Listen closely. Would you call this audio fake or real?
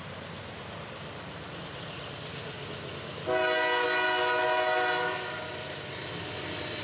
real